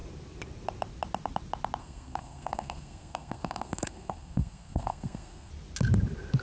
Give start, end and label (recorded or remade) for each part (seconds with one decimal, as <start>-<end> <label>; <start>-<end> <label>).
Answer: 0.0-1.8 recorded; 1.8-5.5 remade; 5.5-6.4 recorded